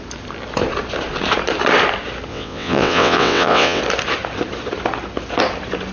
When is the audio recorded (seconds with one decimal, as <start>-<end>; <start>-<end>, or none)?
0.0-2.3; 3.8-5.9